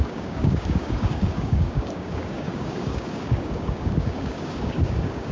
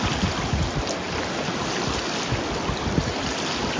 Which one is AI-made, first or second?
first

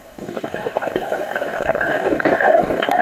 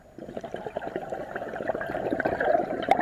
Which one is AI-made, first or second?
first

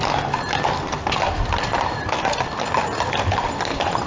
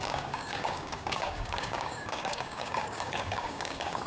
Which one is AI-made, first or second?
second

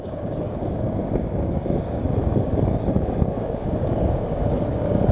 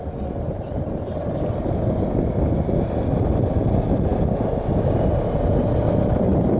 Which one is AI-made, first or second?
first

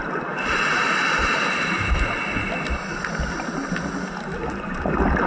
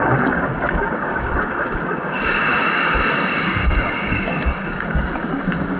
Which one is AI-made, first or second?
second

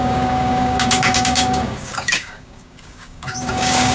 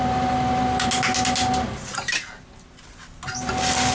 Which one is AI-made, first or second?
first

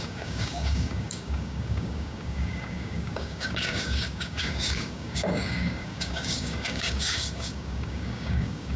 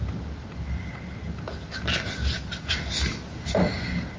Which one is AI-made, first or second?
first